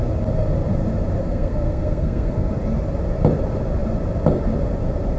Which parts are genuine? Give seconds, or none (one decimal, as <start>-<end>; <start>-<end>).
0.0-1.2; 2.5-5.2